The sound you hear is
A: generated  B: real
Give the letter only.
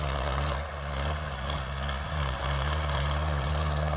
A